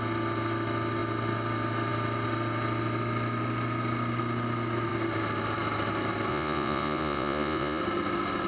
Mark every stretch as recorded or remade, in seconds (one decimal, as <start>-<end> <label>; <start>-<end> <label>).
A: 0.0-6.3 recorded; 6.3-7.8 remade; 7.8-8.5 recorded